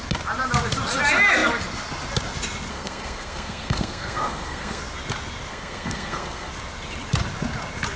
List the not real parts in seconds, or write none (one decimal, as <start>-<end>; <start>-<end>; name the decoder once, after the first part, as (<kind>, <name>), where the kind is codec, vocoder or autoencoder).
2.7-4.8 (codec, SNAC); 5.5-6.5